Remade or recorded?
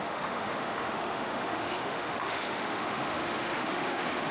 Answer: remade